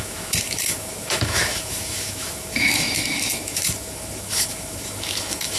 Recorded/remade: remade